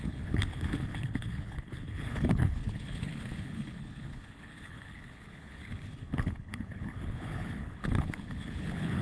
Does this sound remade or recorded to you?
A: remade